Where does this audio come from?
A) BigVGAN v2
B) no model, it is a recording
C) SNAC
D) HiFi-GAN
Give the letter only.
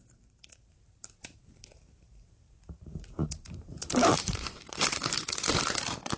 A